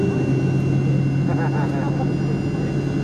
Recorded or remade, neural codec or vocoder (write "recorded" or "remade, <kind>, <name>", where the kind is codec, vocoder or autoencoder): recorded